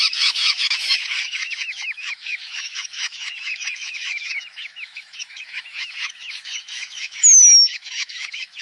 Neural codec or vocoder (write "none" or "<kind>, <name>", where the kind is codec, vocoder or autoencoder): autoencoder, DAC-VAE